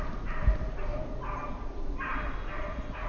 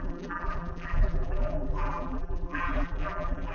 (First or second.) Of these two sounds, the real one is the first